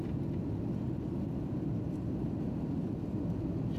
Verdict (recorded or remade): recorded